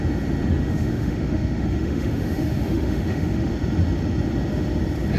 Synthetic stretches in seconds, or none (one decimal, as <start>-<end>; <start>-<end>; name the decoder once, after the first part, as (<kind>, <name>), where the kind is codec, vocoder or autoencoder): 0.5-3.5 (autoencoder, DAC-VAE)